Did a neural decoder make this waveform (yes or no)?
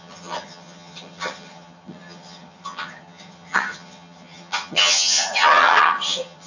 yes